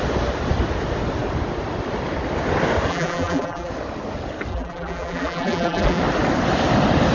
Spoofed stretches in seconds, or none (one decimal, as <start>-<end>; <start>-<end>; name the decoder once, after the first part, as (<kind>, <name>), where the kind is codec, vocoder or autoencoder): 2.9-3.7 (vocoder, BigVGAN v2); 4.5-6.0